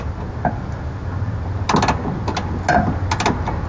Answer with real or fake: real